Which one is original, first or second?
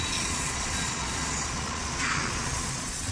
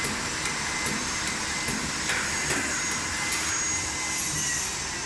second